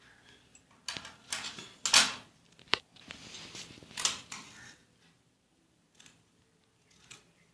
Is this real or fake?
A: real